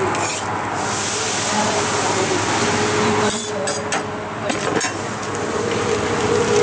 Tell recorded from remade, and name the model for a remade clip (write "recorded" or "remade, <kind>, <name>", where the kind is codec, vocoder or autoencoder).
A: recorded